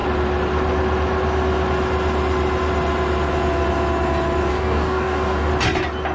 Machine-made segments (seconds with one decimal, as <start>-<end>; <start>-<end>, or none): 4.5-5.5